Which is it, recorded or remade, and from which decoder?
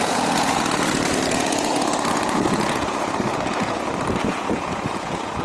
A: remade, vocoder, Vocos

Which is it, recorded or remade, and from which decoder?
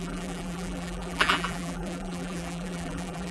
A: remade, vocoder, BigVGAN v2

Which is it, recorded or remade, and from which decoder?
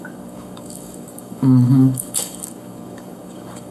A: remade, codec, DAC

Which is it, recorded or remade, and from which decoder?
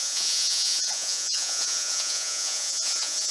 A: remade, vocoder, Vocos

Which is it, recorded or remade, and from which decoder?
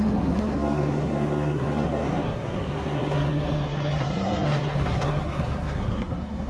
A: remade, codec, SNAC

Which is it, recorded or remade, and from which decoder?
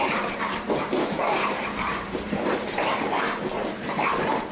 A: remade, vocoder, BigVGAN v2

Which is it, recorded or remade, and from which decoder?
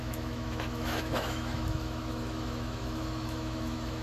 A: remade, autoencoder, DAC-VAE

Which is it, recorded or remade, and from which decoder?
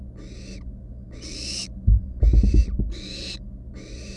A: recorded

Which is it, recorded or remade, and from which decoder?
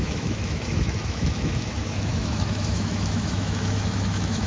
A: remade, autoencoder, DAC-VAE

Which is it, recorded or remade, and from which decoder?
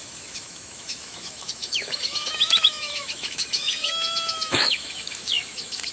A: remade, autoencoder, DAC-VAE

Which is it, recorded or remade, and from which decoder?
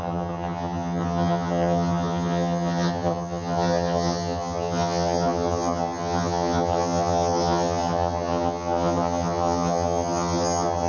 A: remade, vocoder, HiFi-GAN